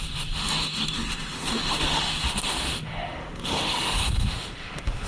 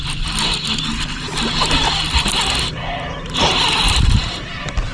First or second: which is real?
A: second